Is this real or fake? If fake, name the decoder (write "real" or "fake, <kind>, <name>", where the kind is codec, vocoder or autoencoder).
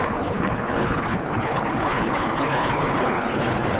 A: fake, codec, HILCodec